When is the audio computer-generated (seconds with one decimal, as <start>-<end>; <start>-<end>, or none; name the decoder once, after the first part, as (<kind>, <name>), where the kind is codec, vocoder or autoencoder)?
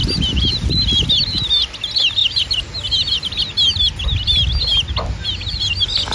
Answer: none